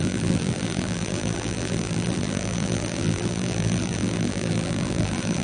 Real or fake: fake